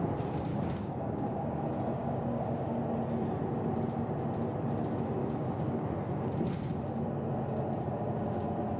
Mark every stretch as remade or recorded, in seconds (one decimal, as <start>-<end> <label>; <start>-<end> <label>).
0.0-0.5 recorded; 0.5-1.6 remade; 1.6-2.0 recorded; 2.0-2.8 remade; 2.8-5.2 recorded; 5.2-5.8 remade; 5.8-8.8 recorded